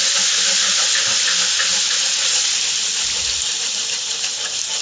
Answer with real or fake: real